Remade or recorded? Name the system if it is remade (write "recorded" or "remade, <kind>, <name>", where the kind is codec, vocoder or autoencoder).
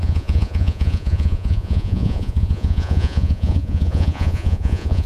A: remade, vocoder, Vocos